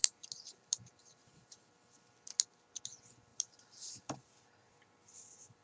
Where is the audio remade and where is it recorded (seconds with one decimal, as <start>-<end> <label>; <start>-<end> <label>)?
0.0-1.7 remade; 1.7-3.3 recorded; 3.3-4.3 remade; 4.3-5.6 recorded